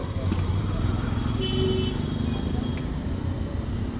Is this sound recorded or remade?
recorded